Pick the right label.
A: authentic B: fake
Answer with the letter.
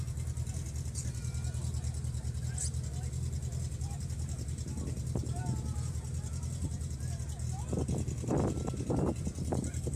A